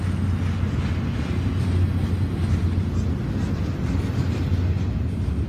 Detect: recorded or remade recorded